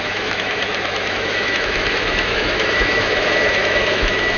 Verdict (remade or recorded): remade